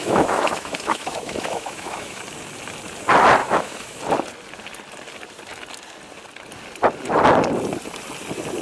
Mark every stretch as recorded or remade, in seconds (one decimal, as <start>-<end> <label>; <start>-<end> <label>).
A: 0.0-2.2 remade; 2.2-3.4 recorded; 3.4-4.0 remade; 4.0-8.6 recorded

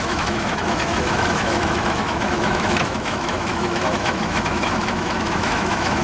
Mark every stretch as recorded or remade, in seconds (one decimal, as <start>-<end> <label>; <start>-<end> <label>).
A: 0.0-6.0 remade

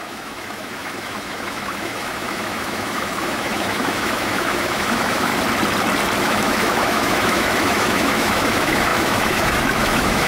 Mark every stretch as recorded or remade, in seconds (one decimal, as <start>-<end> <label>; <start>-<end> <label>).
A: 0.0-5.3 remade; 5.3-6.2 recorded; 6.2-10.3 remade

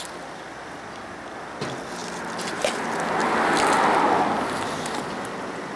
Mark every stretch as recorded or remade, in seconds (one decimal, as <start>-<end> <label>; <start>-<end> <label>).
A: 0.0-5.8 recorded

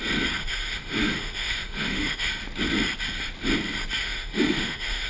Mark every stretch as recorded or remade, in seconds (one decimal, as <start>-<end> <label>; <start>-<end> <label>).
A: 0.0-0.4 recorded; 0.4-2.3 remade; 2.3-4.0 recorded; 4.0-5.1 remade

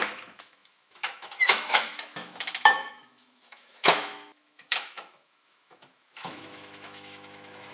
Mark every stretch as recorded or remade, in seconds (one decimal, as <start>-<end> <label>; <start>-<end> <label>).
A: 0.0-7.7 remade